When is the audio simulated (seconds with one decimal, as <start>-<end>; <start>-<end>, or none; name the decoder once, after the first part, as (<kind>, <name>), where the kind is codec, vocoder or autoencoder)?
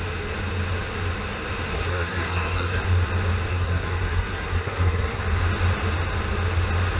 1.7-2.8 (codec, SNAC); 3.5-5.2